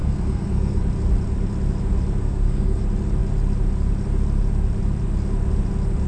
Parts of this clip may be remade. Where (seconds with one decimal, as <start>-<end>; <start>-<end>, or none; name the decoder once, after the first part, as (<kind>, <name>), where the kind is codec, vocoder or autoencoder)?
0.0-0.8 (codec, SNAC); 2.2-2.8